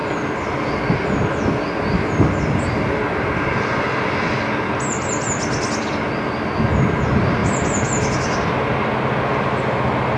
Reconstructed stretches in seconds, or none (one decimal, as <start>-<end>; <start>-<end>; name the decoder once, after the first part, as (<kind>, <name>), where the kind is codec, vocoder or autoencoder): 7.4-8.0 (vocoder, BigVGAN v2)